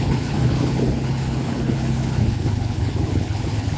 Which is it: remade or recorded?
remade